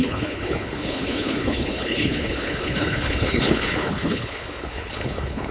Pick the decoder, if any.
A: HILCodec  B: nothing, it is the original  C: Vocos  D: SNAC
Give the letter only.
A